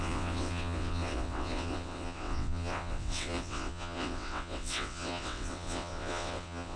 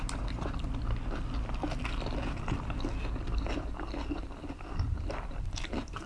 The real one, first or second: second